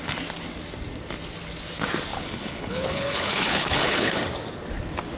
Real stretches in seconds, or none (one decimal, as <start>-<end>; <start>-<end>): 0.0-2.1; 4.2-5.2